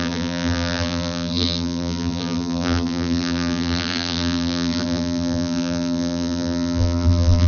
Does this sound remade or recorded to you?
remade